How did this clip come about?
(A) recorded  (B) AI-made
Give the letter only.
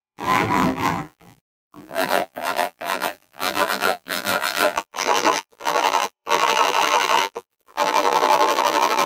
B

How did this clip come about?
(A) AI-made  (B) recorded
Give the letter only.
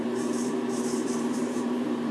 A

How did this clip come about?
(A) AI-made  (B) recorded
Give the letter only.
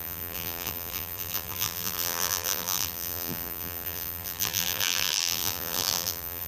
A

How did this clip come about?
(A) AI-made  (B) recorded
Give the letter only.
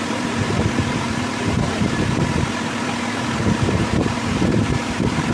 A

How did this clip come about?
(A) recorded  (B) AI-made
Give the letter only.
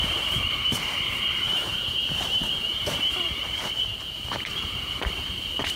B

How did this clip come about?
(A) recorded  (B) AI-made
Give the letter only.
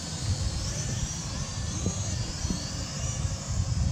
B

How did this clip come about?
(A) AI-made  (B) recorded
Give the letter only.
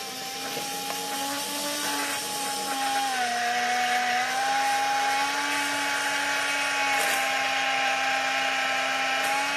B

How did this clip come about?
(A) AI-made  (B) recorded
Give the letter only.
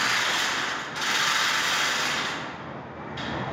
B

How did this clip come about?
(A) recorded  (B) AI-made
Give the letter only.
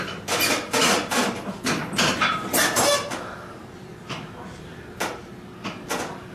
B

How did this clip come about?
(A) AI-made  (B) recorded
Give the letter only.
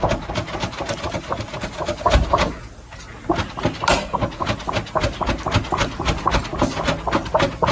B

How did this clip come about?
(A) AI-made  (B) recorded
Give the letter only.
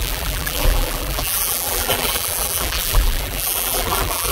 A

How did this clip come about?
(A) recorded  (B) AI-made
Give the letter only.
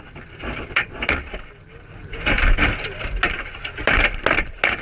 A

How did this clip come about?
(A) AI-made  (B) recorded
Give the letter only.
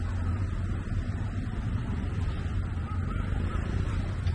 B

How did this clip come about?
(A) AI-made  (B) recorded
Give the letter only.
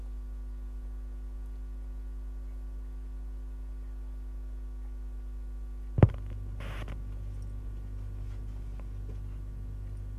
B